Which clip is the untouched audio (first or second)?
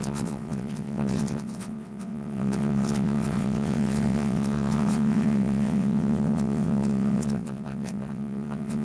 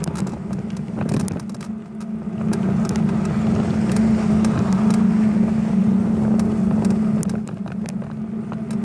second